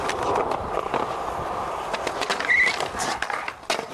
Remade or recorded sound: recorded